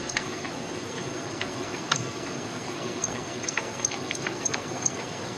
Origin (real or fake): fake